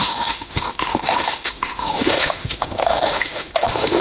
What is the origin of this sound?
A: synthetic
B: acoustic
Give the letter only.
A